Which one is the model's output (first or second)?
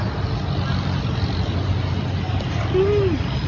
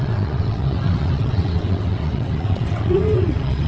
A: second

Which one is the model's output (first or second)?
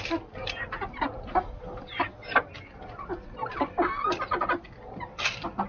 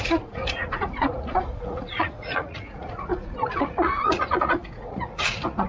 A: second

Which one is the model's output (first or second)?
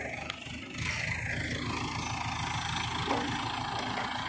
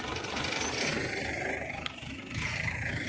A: second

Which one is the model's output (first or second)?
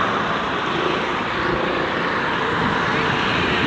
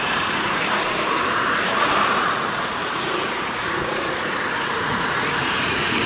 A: second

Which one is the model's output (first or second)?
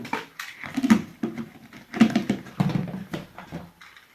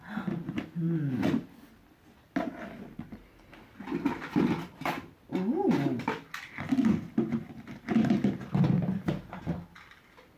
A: first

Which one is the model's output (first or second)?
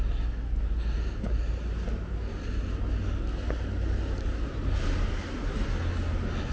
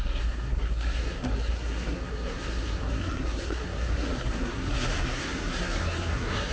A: second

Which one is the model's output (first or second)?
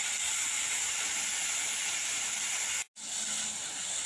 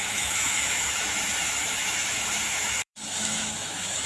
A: second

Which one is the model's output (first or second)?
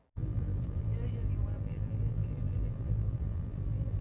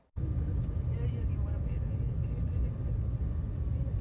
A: first